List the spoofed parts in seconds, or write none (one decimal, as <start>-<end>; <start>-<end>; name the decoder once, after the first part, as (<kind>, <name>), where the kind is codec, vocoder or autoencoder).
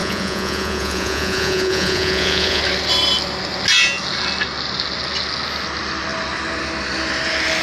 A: 0.0-2.6 (vocoder, Vocos)